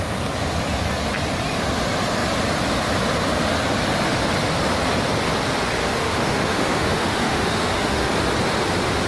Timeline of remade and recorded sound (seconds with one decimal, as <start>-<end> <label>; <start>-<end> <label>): 0.0-5.8 recorded; 5.8-8.1 remade; 8.1-9.1 recorded